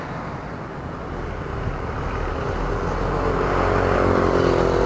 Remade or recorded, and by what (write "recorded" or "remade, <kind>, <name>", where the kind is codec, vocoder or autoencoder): recorded